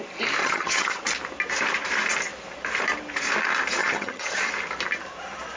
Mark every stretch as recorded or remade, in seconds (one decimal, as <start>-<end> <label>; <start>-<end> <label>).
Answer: 0.0-0.4 recorded; 0.4-1.0 remade; 1.0-3.8 recorded; 3.8-4.5 remade; 4.5-5.6 recorded